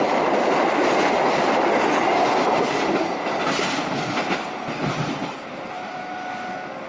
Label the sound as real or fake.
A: real